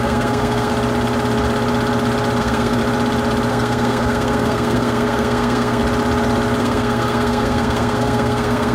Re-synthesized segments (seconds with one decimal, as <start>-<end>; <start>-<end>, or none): 0.0-0.7; 2.4-2.8; 3.5-5.8; 6.6-8.7